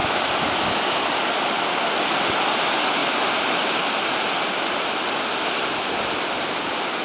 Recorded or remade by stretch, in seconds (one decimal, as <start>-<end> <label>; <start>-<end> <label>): 0.0-7.0 recorded